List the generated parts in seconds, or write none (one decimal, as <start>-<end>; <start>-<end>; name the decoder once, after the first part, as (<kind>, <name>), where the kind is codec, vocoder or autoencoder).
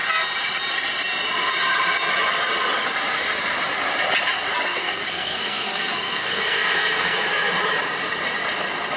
4.7-7.5 (codec, SNAC)